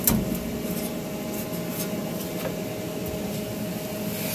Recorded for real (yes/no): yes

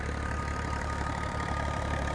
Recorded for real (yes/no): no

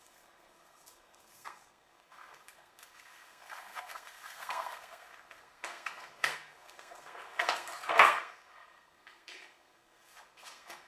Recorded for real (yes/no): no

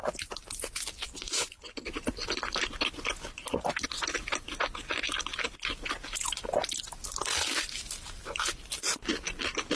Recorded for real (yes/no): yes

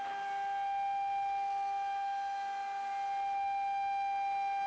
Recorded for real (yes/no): yes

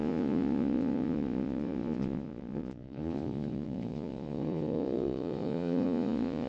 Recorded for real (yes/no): no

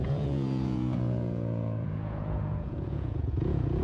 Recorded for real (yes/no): no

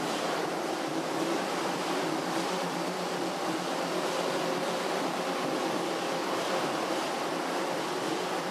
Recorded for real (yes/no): no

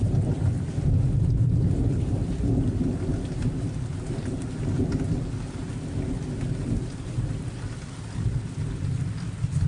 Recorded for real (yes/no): yes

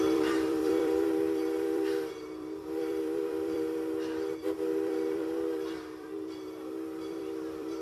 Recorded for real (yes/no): no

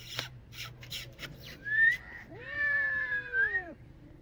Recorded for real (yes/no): no